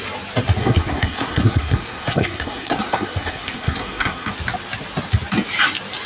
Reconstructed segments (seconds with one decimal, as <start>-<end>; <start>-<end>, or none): 0.6-4.3